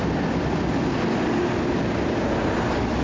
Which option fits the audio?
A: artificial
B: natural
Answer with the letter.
B